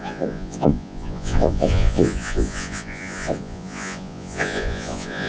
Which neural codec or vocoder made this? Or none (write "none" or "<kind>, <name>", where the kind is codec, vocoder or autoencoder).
vocoder, Vocos